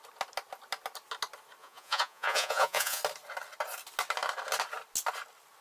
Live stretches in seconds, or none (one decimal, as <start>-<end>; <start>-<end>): 0.0-1.6; 3.0-5.6